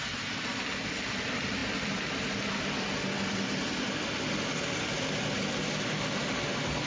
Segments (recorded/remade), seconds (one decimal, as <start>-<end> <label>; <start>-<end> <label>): 0.0-6.9 recorded